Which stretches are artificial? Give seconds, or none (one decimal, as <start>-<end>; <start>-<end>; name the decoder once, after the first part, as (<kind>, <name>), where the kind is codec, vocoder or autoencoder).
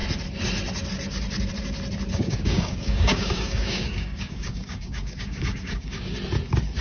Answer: 2.1-6.2 (codec, DAC)